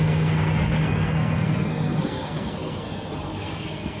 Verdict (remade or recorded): remade